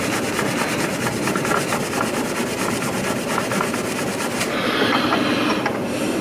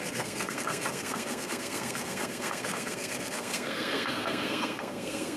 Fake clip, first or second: second